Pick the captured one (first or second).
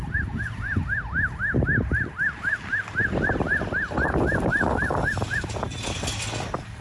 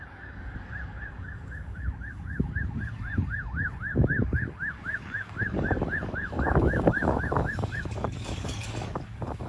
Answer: first